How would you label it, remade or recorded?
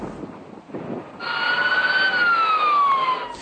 recorded